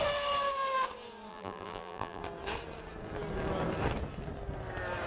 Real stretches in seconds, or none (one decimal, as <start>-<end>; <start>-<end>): 0.0-1.3; 2.2-5.1